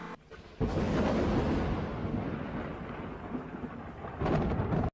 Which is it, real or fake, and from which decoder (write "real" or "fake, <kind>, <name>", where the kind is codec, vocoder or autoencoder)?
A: real